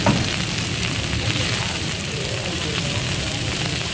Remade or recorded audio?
remade